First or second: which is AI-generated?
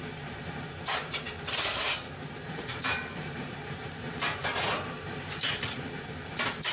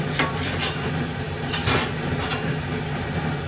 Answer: first